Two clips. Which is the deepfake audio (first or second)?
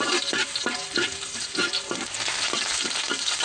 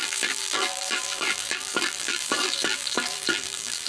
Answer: second